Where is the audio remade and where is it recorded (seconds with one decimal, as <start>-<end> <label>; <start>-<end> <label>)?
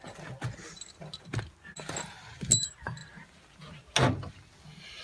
0.0-5.0 recorded